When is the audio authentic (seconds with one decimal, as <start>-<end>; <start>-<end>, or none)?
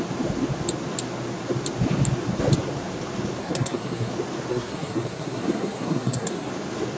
0.0-3.4; 4.1-4.5; 6.5-7.0